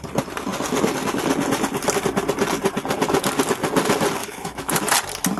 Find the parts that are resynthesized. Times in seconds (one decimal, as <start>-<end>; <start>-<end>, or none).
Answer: 4.2-4.8